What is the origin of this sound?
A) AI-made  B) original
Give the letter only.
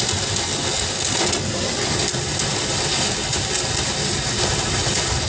B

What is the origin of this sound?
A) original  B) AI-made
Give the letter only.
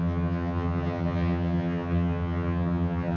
B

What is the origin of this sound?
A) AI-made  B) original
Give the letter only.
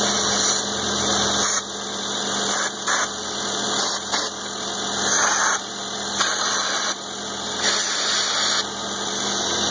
B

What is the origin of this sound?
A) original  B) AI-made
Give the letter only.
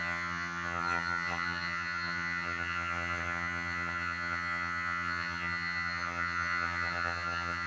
B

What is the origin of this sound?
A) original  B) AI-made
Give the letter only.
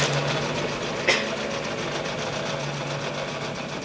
A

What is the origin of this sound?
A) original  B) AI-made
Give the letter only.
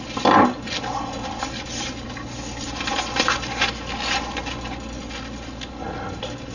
A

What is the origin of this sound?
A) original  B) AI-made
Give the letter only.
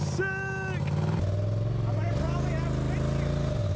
A